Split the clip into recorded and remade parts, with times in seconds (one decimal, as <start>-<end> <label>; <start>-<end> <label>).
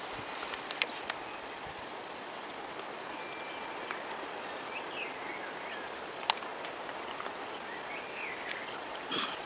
0.0-9.5 recorded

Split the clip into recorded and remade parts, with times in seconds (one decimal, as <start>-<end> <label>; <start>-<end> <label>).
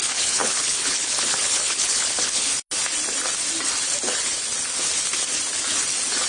0.0-2.5 remade; 2.5-6.3 recorded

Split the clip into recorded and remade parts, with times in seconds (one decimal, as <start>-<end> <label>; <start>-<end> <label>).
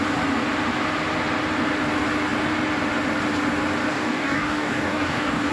0.0-3.9 recorded; 3.9-5.5 remade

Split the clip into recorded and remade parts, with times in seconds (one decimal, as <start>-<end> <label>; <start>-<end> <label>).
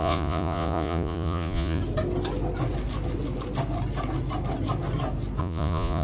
0.0-1.8 remade; 1.8-5.4 recorded; 5.4-6.0 remade